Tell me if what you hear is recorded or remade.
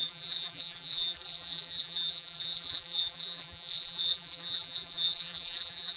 remade